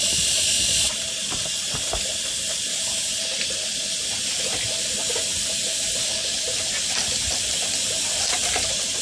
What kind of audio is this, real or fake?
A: real